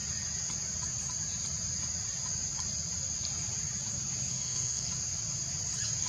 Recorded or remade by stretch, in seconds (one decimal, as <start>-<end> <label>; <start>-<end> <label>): 0.0-4.3 recorded; 4.3-4.9 remade; 4.9-6.1 recorded